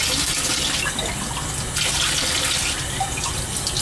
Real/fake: real